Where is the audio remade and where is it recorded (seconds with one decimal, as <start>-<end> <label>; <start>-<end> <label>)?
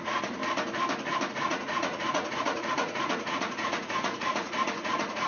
0.0-0.4 remade; 0.4-1.3 recorded; 1.3-5.3 remade